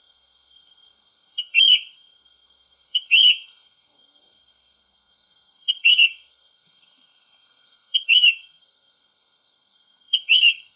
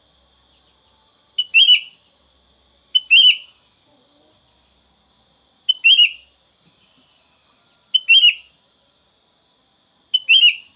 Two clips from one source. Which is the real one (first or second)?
second